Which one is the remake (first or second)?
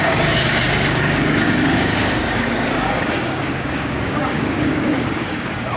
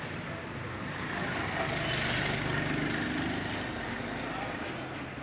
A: first